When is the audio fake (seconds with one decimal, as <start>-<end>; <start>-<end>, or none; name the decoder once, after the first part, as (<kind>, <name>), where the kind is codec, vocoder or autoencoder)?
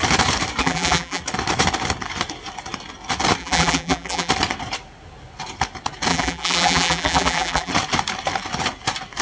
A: 0.6-1.2 (vocoder, BigVGAN v2); 3.4-4.3; 6.1-7.7